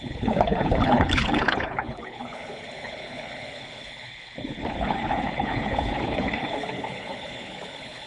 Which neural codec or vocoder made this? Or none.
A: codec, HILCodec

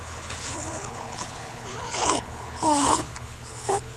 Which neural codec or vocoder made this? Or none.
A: codec, HILCodec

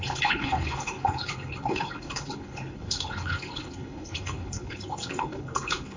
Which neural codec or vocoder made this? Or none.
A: codec, HILCodec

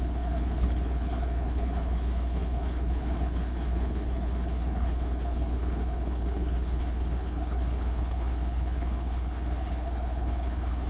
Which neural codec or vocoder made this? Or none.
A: codec, HILCodec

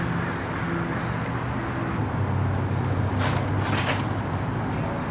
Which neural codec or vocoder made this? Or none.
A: none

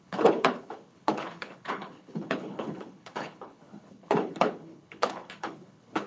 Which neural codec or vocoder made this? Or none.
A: codec, HILCodec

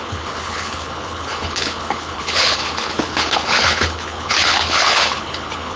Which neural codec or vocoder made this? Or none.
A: codec, HILCodec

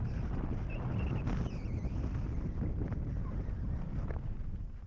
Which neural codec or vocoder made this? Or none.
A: none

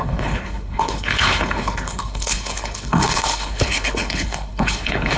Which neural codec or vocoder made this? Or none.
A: codec, HILCodec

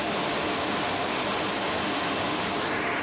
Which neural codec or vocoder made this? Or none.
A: none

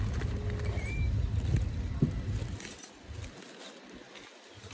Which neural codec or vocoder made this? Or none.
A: none